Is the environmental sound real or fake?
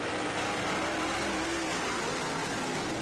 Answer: real